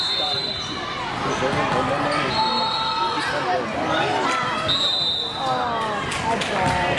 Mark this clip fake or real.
real